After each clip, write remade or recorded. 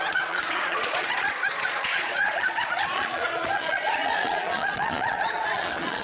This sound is remade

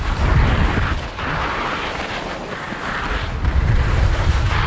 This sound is recorded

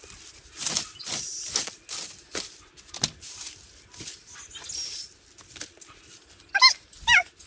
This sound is recorded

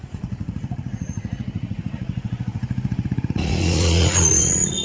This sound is remade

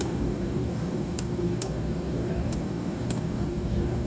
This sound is remade